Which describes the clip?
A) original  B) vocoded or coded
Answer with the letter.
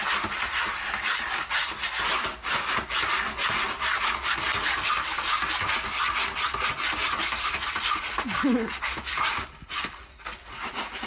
A